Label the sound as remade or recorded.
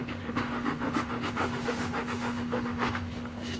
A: remade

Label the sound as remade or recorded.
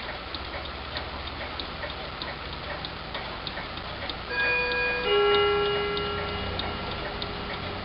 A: recorded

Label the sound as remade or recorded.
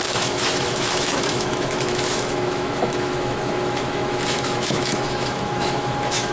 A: remade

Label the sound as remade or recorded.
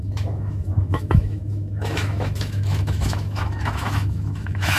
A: remade